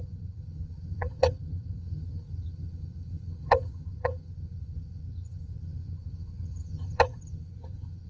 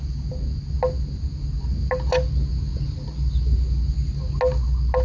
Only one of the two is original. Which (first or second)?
second